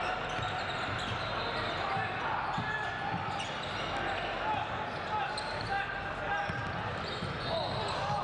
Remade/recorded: recorded